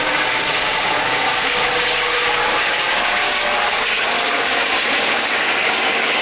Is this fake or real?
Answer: fake